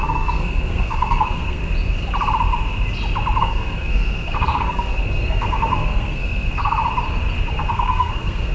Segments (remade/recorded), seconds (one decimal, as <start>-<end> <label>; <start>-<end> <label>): 0.0-1.6 remade; 1.6-3.4 recorded; 3.4-6.8 remade; 6.8-7.5 recorded; 7.5-8.5 remade